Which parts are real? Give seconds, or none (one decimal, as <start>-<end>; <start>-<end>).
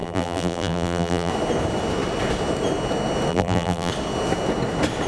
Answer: 1.3-3.3; 3.9-5.1